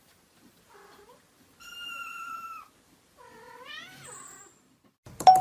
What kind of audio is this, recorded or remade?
recorded